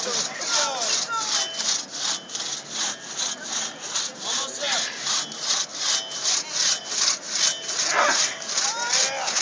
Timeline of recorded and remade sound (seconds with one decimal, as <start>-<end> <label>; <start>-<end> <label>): 0.0-9.4 recorded